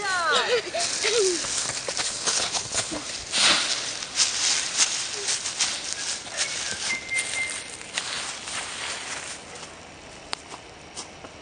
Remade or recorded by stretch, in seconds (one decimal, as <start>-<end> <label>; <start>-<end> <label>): 0.0-2.0 recorded; 2.0-3.0 remade; 3.0-11.4 recorded